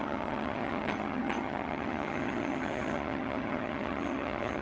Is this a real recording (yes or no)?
no